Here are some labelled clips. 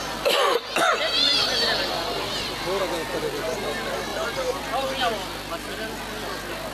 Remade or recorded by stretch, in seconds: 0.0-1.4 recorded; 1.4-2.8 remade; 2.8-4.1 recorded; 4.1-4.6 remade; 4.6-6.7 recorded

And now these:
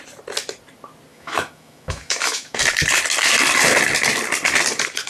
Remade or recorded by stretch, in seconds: 0.0-1.1 recorded; 1.1-2.6 remade; 2.6-5.1 recorded

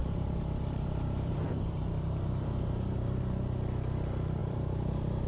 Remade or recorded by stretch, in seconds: 0.0-3.2 remade; 3.2-4.4 recorded; 4.4-5.3 remade

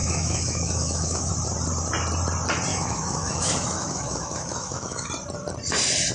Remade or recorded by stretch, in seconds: 0.0-1.3 remade; 1.3-2.7 recorded; 2.7-5.1 remade; 5.1-6.1 recorded

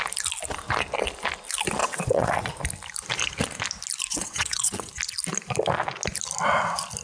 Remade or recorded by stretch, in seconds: 0.0-1.8 recorded; 1.8-2.5 remade; 2.5-4.1 recorded; 4.1-4.9 remade; 4.9-7.0 recorded